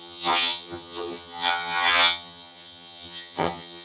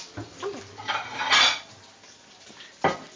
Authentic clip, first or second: second